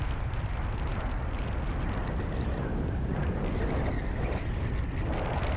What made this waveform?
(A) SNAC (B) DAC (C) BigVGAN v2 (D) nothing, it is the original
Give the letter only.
D